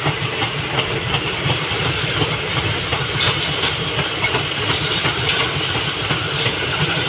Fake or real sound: real